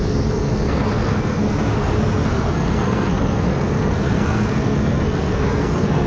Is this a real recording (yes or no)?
no